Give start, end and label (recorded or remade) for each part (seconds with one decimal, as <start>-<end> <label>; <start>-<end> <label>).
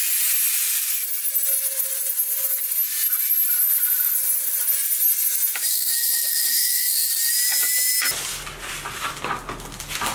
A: 0.0-5.7 recorded; 5.7-7.1 remade; 7.1-10.1 recorded